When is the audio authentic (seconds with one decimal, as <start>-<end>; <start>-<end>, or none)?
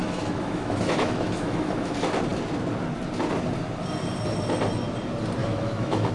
1.9-5.4